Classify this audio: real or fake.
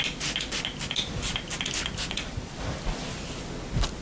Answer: real